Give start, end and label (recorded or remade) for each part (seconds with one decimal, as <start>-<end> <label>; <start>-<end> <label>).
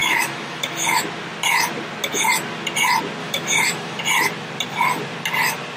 0.0-1.0 remade; 1.0-3.2 recorded; 3.2-4.0 remade; 4.0-5.8 recorded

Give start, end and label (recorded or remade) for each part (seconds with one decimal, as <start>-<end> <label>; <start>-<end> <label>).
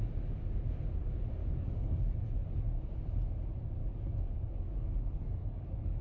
0.0-1.4 recorded; 1.4-2.0 remade; 2.0-3.8 recorded; 3.8-6.0 remade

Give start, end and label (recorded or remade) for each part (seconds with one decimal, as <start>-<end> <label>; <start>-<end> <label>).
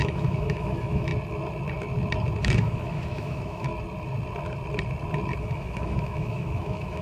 0.0-1.1 remade; 1.1-2.4 recorded; 2.4-3.7 remade; 3.7-5.4 recorded; 5.4-7.0 remade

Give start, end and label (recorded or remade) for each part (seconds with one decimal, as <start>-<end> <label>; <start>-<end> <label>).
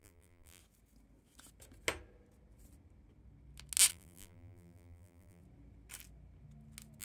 0.0-0.6 remade; 0.6-3.9 recorded; 3.9-5.4 remade; 5.4-7.0 recorded